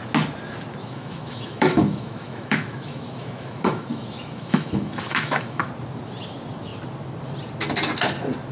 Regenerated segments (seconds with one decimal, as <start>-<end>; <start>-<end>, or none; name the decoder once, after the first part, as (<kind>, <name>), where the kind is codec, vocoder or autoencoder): 0.8-5.7 (autoencoder, DAC-VAE)